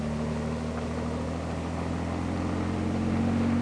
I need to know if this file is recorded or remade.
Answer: recorded